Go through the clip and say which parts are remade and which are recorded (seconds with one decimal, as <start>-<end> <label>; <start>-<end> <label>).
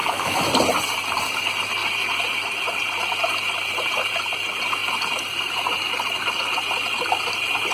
0.0-0.5 remade; 0.5-7.7 recorded